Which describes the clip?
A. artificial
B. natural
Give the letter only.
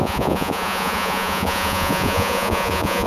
A